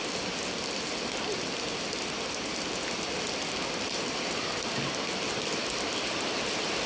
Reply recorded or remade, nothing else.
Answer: recorded